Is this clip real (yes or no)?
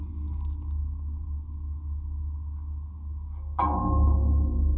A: yes